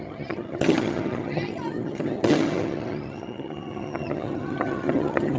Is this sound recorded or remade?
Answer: remade